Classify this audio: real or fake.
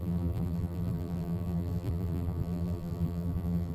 fake